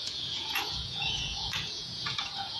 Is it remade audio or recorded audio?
remade